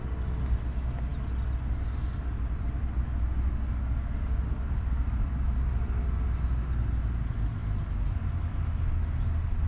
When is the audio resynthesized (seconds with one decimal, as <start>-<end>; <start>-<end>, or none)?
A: none